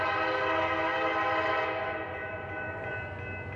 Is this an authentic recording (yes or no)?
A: yes